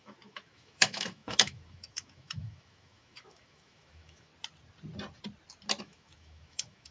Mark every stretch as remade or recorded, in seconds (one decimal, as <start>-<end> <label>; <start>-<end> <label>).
0.0-4.3 remade; 4.3-5.8 recorded; 5.8-6.9 remade